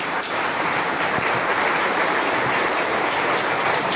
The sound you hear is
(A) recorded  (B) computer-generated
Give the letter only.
B